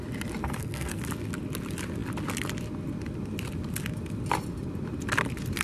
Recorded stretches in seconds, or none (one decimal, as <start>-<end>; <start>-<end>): 0.0-0.4; 1.0-5.6